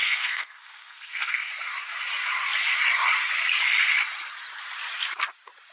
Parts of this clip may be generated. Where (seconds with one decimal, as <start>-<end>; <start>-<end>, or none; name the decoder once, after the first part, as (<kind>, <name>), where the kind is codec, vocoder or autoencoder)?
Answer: 0.0-1.5 (codec, SNAC)